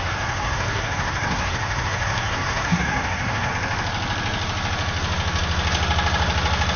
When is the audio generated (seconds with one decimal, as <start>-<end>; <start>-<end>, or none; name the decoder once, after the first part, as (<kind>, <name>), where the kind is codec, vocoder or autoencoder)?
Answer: 0.0-3.5 (codec, SNAC)